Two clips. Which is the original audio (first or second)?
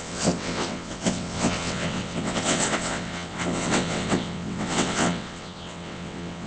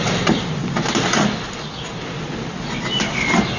second